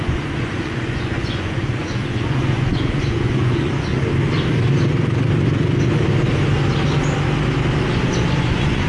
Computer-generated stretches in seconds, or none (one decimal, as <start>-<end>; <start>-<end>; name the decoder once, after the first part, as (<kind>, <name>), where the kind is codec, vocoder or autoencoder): 0.0-3.9 (vocoder, Vocos); 8.4-8.9